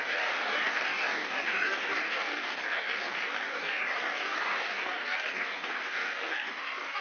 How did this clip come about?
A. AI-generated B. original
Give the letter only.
A